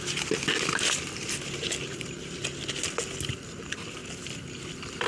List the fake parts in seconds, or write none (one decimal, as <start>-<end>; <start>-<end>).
1.2-2.3; 4.0-4.6